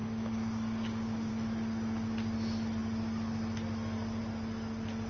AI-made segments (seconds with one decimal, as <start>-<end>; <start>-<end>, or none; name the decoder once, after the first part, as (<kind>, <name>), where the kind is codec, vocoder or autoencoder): 0.0-1.3 (codec, DAC)